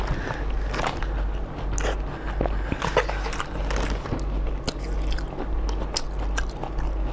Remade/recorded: recorded